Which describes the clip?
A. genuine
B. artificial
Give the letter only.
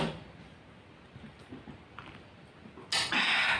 A